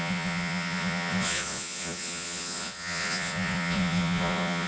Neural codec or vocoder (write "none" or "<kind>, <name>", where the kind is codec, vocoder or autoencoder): vocoder, Vocos